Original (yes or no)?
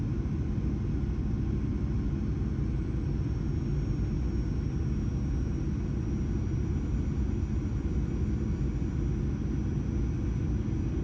yes